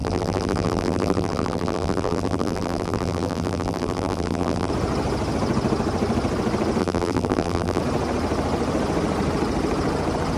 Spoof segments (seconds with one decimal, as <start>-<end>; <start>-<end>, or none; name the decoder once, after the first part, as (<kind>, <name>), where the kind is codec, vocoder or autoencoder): 0.0-4.7 (vocoder, BigVGAN v2); 6.8-7.8